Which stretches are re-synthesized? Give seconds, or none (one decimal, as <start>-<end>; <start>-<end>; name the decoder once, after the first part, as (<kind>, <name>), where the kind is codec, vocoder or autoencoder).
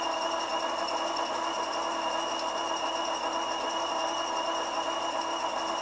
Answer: none